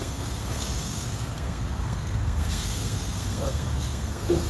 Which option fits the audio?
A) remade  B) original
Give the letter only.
A